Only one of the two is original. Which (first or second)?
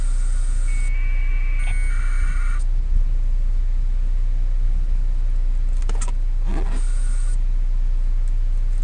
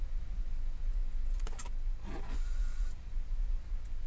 first